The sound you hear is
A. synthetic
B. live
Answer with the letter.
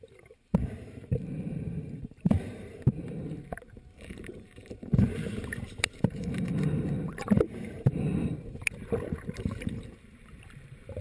A